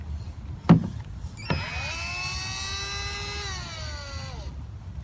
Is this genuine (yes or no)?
yes